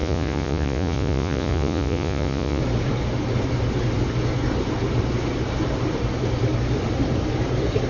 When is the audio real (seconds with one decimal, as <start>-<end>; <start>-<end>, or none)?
2.6-7.9